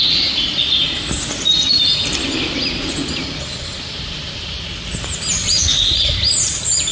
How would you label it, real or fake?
real